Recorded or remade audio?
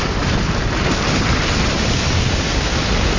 remade